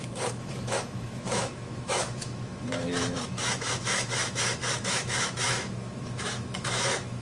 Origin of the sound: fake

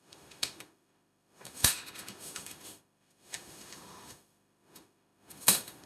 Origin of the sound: fake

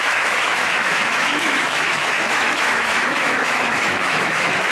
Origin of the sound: fake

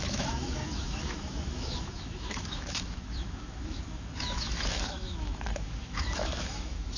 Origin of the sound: fake